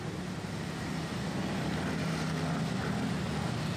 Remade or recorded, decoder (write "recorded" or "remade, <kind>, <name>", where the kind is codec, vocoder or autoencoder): recorded